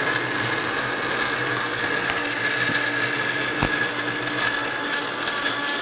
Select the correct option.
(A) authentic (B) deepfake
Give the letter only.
A